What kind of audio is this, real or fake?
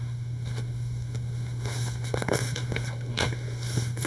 fake